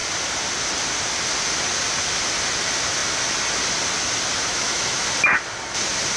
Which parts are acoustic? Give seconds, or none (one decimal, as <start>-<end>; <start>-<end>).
0.0-4.5; 5.0-6.2